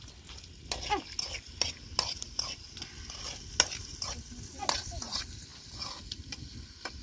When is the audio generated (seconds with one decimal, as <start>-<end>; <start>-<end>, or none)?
none